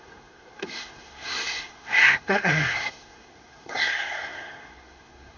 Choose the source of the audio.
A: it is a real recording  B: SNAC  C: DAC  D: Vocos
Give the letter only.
B